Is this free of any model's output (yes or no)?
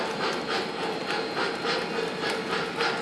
yes